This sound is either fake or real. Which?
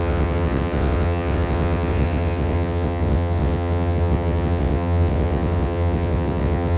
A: fake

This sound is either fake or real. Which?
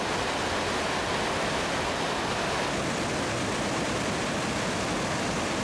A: real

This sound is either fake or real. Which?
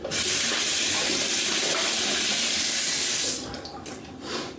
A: real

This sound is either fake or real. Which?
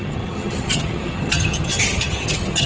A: fake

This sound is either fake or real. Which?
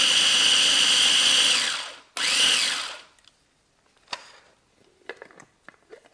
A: real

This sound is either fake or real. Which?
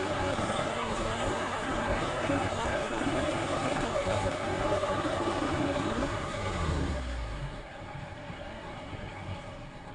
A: fake